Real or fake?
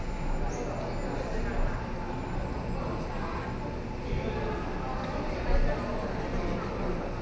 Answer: real